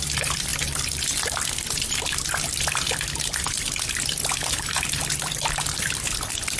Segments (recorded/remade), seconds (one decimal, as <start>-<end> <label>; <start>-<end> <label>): 0.0-6.6 remade